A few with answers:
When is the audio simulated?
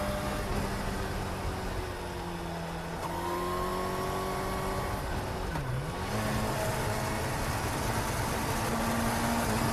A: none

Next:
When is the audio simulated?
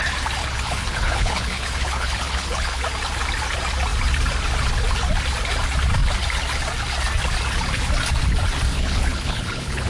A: 0.4-2.8 (codec, HILCodec); 8.7-9.9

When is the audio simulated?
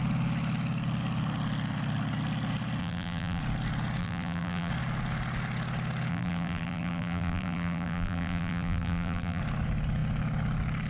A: 2.8-3.4 (vocoder, BigVGAN v2); 4.0-4.7; 6.1-9.4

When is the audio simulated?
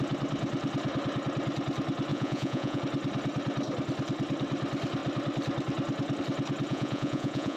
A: 2.1-2.8 (vocoder, Vocos); 6.7-7.6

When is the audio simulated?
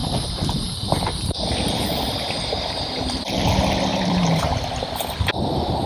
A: 0.0-3.5 (vocoder, BigVGAN v2); 3.9-4.4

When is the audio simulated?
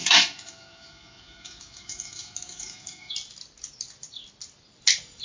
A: 0.0-3.1 (autoencoder, DAC-VAE)